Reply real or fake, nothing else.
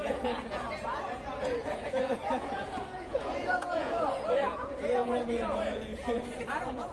fake